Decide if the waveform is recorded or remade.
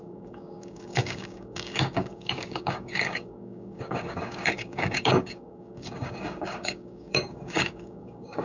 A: remade